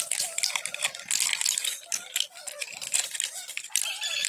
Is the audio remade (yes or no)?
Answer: yes